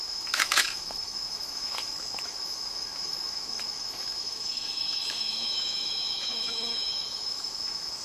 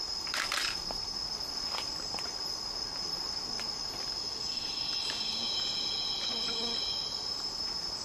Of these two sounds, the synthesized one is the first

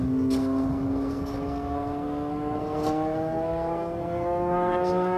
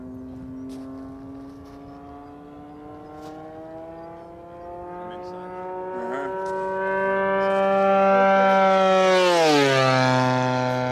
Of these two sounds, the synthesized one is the first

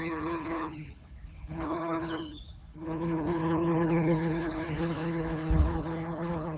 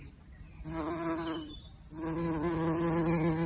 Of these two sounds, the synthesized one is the first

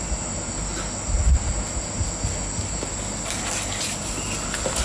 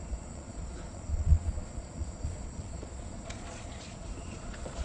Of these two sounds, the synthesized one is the second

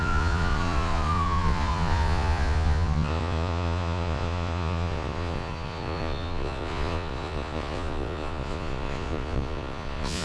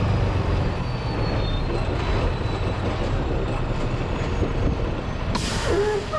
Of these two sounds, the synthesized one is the first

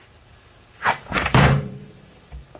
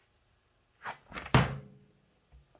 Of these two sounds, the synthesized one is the first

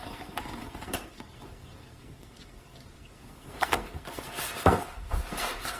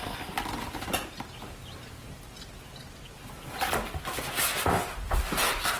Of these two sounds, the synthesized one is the first